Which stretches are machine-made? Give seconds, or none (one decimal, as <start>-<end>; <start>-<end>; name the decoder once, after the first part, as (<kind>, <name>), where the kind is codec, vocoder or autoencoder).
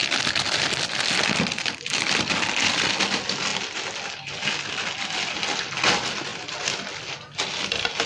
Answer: none